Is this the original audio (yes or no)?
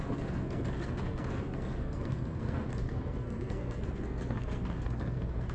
no